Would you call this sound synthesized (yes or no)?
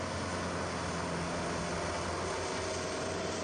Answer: no